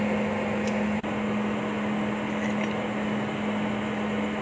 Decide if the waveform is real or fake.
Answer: real